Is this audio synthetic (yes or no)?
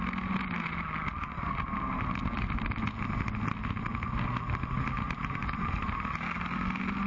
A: no